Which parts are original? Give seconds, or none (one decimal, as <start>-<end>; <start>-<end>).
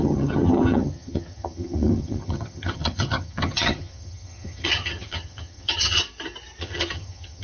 6.0-6.6